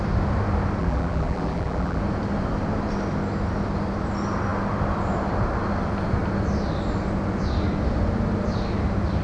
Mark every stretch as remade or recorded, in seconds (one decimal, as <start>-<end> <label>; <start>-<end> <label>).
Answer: 0.0-0.8 recorded; 0.8-2.0 remade; 2.0-9.2 recorded